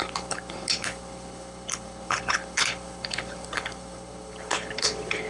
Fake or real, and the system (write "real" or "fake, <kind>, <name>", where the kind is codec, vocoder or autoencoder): fake, codec, HILCodec